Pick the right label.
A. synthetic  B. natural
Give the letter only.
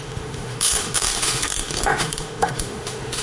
A